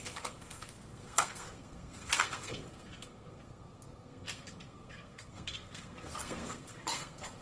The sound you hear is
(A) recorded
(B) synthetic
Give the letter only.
B